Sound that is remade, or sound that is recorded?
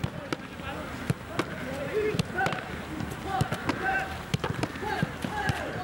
recorded